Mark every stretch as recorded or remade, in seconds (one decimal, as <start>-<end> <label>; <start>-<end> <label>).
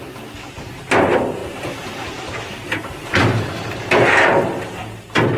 0.0-1.4 recorded; 1.4-4.6 remade; 4.6-5.4 recorded